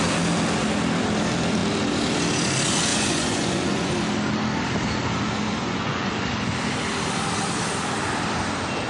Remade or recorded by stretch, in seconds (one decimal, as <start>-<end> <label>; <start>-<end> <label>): 0.0-2.9 recorded; 2.9-3.9 remade; 3.9-5.5 recorded; 5.5-6.1 remade; 6.1-8.9 recorded